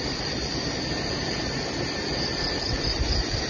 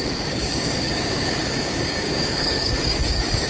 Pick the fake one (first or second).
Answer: second